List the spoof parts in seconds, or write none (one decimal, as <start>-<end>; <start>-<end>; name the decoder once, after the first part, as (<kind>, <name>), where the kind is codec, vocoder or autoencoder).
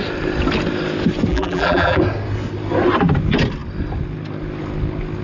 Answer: 1.3-2.0 (vocoder, BigVGAN v2)